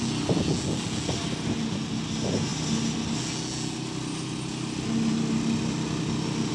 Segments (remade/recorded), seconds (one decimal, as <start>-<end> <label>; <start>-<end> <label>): 0.0-6.5 recorded